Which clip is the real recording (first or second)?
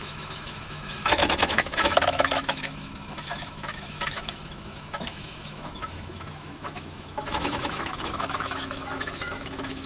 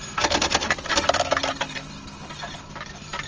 second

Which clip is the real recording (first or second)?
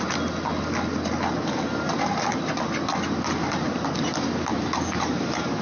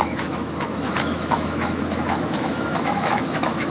first